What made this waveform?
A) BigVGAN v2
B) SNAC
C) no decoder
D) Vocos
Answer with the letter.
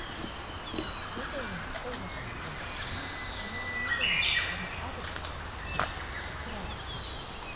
C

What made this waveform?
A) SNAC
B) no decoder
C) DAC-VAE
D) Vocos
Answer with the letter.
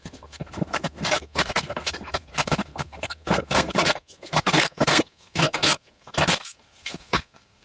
A